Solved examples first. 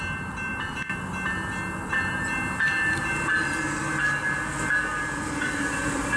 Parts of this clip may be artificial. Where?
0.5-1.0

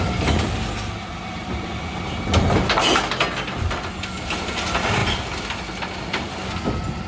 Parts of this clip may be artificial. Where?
1.1-2.3

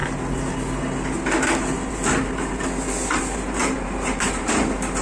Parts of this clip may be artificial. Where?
3.6-4.6

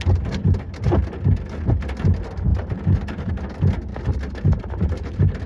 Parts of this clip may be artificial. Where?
2.5-3.3

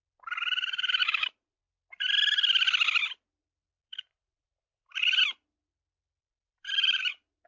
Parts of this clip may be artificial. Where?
1.0-1.6; 3.8-5.2; 6.2-7.0